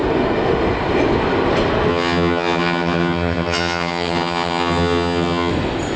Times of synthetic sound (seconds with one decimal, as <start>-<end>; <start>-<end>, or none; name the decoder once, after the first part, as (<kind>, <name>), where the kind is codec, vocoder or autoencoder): 1.9-5.5 (vocoder, HiFi-GAN)